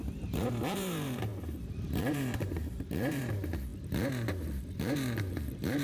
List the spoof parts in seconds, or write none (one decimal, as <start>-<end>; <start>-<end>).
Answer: 0.0-5.8